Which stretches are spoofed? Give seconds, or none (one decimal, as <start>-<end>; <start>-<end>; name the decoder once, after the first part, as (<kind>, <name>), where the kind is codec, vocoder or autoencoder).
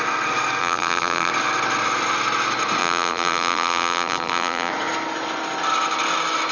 0.6-1.3 (vocoder, BigVGAN v2); 2.8-4.7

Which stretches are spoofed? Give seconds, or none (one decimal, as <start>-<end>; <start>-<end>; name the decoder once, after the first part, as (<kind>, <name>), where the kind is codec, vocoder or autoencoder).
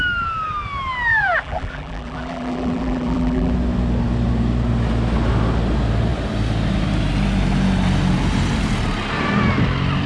1.1-3.5 (vocoder, BigVGAN v2)